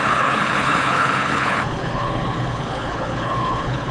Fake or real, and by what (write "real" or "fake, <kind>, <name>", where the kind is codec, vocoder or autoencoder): fake, codec, HILCodec